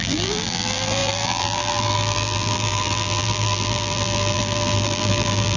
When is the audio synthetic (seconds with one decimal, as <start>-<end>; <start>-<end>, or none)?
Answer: 0.0-5.6